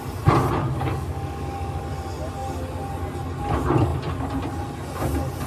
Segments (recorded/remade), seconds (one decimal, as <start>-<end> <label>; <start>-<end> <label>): 0.0-0.6 recorded; 0.6-1.8 remade; 1.8-5.5 recorded